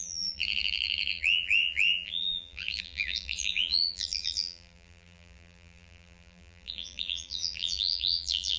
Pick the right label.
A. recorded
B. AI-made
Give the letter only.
B